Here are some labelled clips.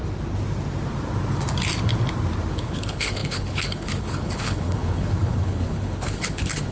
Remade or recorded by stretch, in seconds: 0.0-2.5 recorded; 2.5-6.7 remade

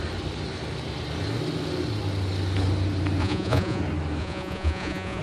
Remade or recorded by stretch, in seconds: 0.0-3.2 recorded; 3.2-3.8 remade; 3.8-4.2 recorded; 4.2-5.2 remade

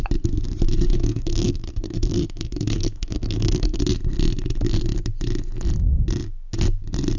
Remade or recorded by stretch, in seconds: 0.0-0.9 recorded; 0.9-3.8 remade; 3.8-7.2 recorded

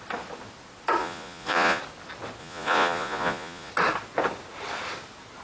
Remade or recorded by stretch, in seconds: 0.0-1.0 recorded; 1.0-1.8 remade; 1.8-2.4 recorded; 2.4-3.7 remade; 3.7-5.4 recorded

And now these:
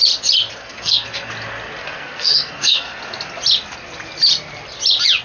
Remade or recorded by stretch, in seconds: 0.0-0.6 recorded; 0.6-1.3 remade; 1.3-1.8 recorded; 1.8-3.0 remade; 3.0-5.2 recorded

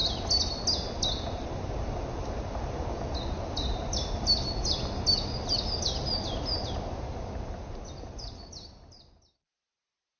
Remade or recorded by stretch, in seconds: 0.0-10.2 recorded

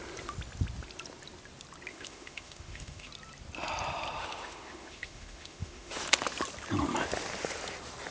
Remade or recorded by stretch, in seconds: 0.0-1.9 recorded; 1.9-3.1 remade; 3.1-4.2 recorded; 4.2-6.0 remade; 6.0-8.1 recorded